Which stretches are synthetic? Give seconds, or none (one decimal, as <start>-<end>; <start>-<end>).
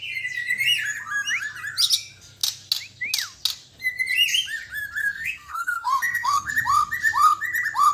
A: 5.0-6.5